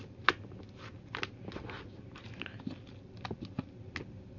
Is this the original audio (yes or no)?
yes